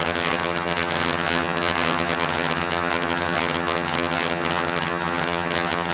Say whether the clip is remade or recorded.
remade